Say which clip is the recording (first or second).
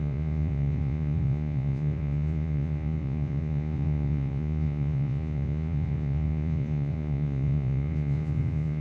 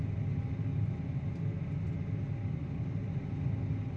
second